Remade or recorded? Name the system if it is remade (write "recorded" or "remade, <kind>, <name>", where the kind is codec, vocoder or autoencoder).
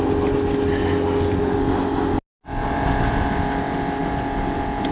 recorded